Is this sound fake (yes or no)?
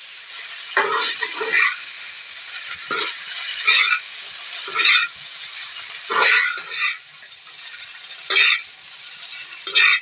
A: no